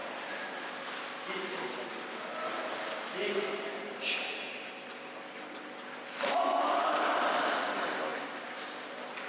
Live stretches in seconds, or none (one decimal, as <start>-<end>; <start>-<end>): 0.0-9.3